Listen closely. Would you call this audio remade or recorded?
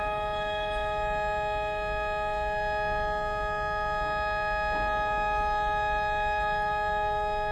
recorded